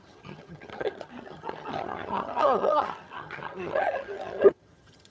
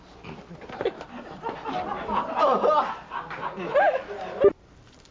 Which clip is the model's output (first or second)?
first